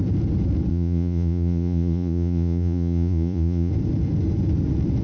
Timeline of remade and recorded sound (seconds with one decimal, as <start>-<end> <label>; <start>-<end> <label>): 0.0-0.7 recorded; 0.7-3.7 remade; 3.7-5.0 recorded